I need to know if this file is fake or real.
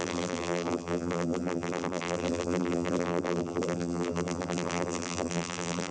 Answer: fake